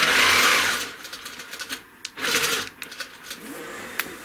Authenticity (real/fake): real